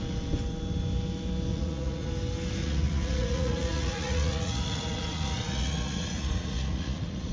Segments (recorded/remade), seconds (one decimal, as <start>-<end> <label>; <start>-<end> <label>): 0.0-1.5 recorded; 1.5-2.1 remade; 2.1-2.6 recorded; 2.6-7.3 remade